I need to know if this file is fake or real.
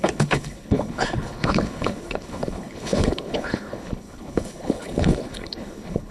fake